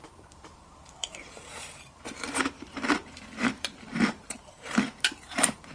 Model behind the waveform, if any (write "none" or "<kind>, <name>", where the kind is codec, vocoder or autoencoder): vocoder, BigVGAN v2